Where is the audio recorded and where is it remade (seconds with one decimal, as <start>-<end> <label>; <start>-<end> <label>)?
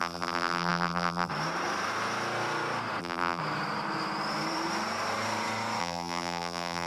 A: 0.0-1.3 remade; 1.3-3.0 recorded; 3.0-3.4 remade; 3.4-5.8 recorded; 5.8-6.9 remade